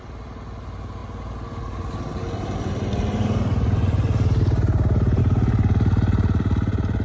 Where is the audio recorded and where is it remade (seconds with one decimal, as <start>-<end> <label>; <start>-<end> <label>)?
0.0-7.0 recorded